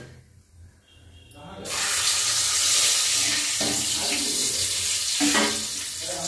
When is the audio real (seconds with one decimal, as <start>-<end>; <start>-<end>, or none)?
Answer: 0.0-6.3